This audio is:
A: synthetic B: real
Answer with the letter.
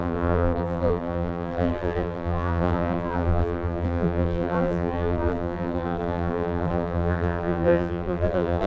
A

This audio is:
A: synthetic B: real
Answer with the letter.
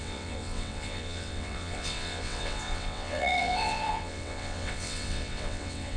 A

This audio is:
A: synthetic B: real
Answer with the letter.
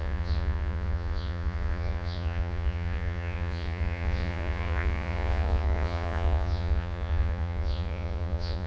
A